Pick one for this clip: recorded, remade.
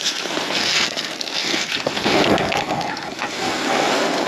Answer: remade